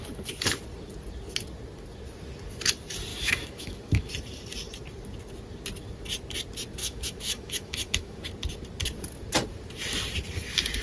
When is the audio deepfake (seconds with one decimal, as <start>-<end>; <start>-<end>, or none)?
3.1-4.1; 6.8-8.2

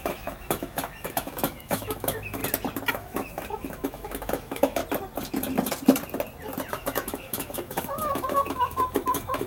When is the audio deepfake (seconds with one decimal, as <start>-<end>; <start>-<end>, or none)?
0.0-2.4; 2.9-4.8; 6.7-9.5

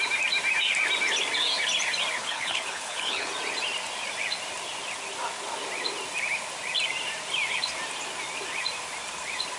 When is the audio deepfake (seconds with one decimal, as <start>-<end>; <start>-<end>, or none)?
2.2-3.3

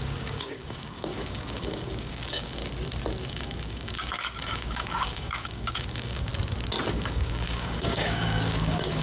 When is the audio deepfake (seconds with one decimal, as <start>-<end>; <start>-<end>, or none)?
0.0-2.6; 3.3-6.3; 6.9-9.0

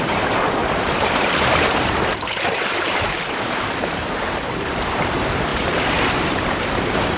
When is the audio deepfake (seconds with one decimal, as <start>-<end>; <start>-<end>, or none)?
0.0-7.2

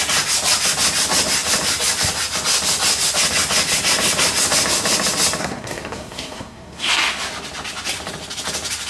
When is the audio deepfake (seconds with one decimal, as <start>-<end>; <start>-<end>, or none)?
5.4-6.9